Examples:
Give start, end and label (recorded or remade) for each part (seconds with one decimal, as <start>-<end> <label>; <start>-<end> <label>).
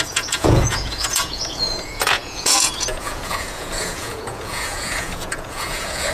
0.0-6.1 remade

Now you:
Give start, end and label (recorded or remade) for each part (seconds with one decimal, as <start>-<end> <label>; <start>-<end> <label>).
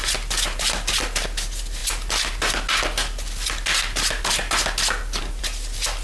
0.0-6.0 recorded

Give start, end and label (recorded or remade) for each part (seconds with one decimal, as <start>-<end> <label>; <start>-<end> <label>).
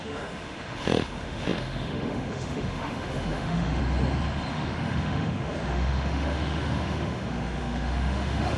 0.0-3.8 remade; 3.8-4.5 recorded; 4.5-8.6 remade